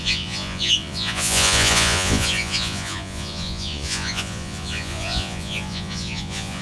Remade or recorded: remade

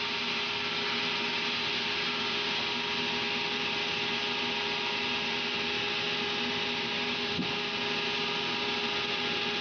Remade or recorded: recorded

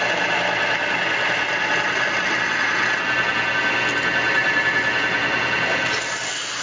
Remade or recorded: recorded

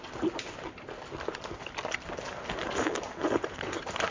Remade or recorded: recorded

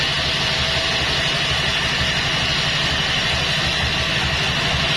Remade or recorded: recorded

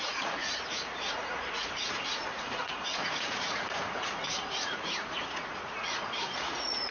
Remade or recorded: remade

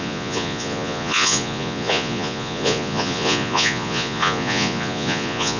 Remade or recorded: remade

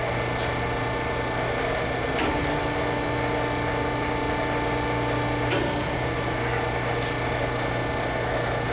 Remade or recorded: recorded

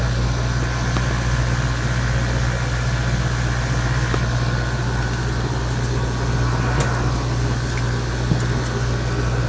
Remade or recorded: recorded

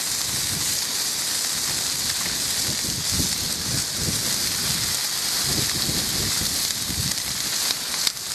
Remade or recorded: recorded